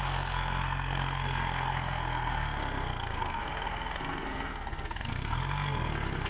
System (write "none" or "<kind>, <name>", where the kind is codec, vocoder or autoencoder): codec, SNAC